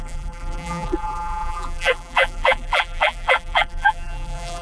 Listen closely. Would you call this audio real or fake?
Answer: fake